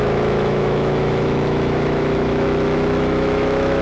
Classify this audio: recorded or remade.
remade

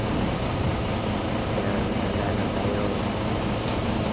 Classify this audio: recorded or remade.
recorded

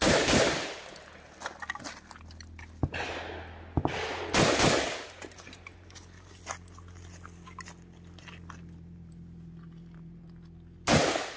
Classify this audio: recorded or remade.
recorded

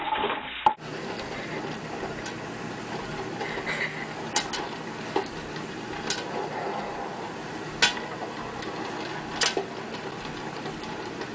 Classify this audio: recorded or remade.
recorded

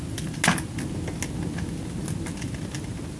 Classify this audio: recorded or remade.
recorded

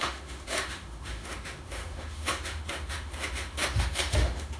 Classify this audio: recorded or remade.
remade